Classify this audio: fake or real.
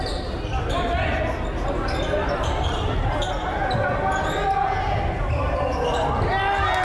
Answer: real